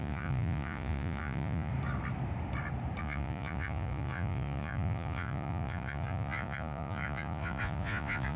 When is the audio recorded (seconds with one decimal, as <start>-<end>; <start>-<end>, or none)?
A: 1.7-3.0